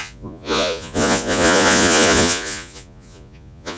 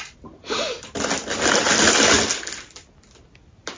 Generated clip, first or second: first